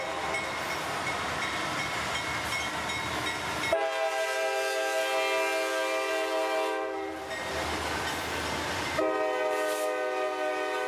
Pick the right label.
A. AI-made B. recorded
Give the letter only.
B